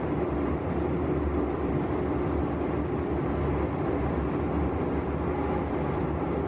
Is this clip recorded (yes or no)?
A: yes